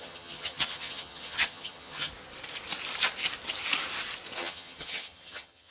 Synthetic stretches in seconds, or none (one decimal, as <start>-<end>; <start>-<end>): 0.0-2.1; 4.4-5.7